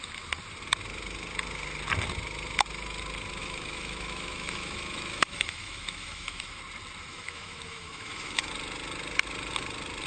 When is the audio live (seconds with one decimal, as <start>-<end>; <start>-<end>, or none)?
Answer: 0.0-3.4; 6.6-7.1; 8.5-10.1